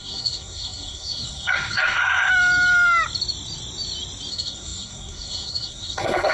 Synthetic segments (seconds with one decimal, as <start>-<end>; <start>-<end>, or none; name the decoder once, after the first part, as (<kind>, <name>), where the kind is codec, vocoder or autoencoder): 0.0-2.3 (codec, SNAC); 4.3-6.3